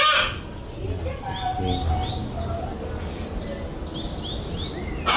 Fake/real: real